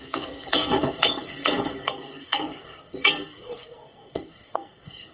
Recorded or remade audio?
remade